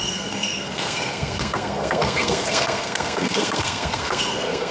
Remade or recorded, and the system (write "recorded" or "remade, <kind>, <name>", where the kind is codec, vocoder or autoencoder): remade, codec, SNAC